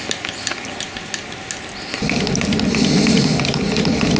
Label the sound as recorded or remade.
recorded